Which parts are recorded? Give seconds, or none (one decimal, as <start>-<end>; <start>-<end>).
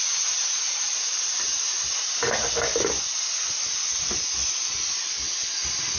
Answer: 0.0-6.0